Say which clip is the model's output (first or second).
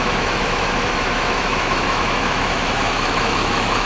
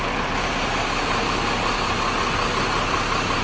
first